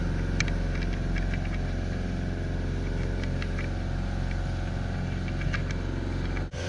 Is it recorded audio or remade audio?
recorded